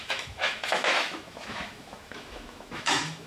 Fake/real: fake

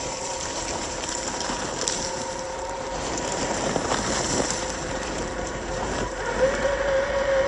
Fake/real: fake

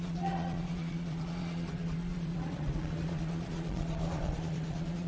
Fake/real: fake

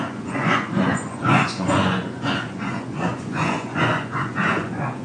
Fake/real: fake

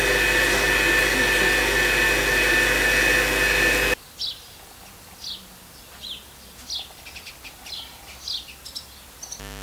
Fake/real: real